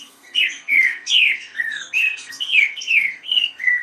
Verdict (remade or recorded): remade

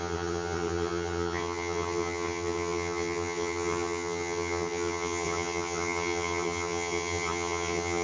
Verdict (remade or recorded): remade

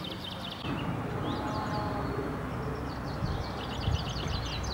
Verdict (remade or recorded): recorded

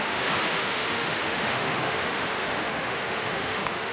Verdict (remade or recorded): remade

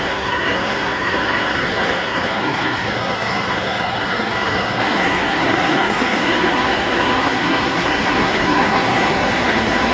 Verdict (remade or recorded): remade